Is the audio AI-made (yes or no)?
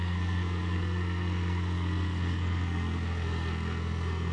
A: yes